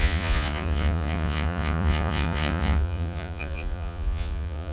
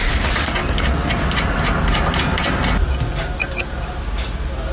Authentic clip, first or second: second